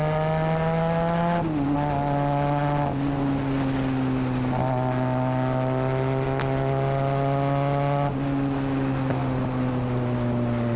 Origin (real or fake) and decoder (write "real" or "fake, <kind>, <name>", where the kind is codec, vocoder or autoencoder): real